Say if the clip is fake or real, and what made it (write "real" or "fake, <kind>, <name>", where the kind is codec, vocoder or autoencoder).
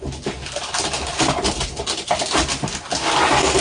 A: real